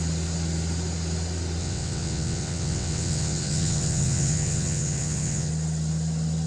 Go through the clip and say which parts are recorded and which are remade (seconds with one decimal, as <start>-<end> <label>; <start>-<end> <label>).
0.0-1.6 recorded; 1.6-5.5 remade; 5.5-6.5 recorded